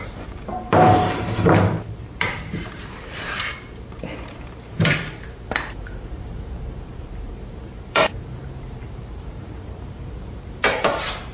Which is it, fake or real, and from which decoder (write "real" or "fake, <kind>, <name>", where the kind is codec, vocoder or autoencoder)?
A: fake, vocoder, BigVGAN v2